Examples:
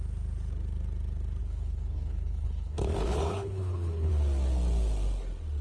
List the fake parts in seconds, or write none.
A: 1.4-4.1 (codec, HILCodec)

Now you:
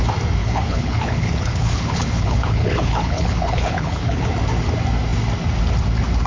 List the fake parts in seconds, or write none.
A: 0.4-4.2 (codec, HILCodec)

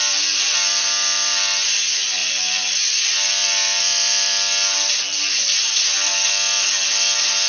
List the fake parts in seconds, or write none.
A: 2.2-4.1 (vocoder, BigVGAN v2)

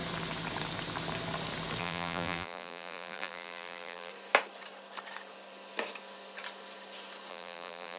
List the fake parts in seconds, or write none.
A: 1.8-4.1 (vocoder, BigVGAN v2); 7.3-8.0

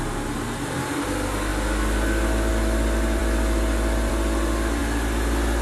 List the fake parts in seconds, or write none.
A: none

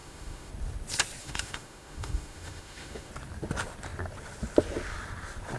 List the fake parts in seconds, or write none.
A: 0.0-0.5 (autoencoder, DAC-VAE); 1.2-3.1

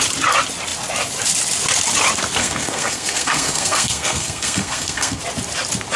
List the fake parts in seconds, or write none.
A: 2.4-5.2 (codec, SNAC)

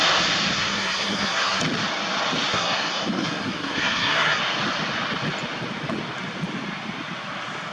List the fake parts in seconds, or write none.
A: 0.5-1.6 (codec, SNAC); 2.5-4.4